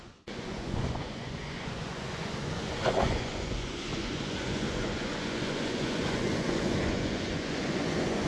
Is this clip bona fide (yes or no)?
no